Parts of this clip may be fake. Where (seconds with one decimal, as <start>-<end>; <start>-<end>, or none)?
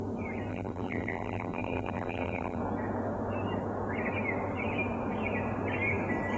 0.5-2.6